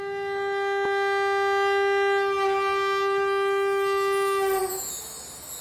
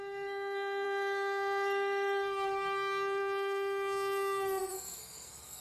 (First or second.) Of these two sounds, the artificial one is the second